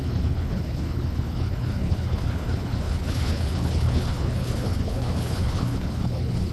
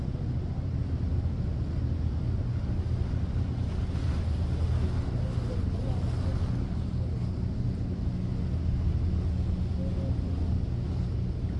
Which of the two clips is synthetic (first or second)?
first